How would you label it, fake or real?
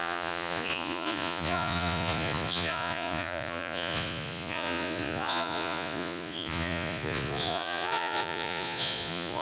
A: fake